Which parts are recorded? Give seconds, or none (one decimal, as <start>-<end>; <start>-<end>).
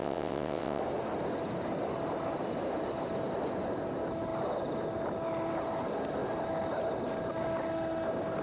0.8-8.4